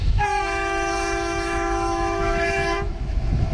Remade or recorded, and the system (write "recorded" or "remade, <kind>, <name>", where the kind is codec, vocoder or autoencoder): remade, autoencoder, DAC-VAE